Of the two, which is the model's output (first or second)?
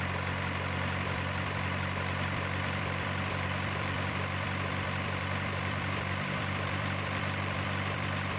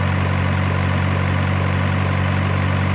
first